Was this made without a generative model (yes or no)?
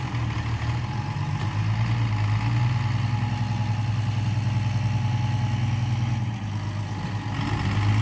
yes